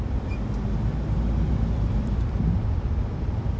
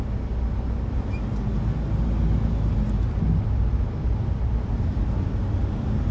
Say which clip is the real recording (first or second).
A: second